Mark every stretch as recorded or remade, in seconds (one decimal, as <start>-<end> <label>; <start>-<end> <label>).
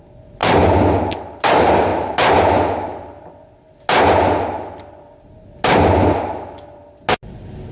0.0-7.7 recorded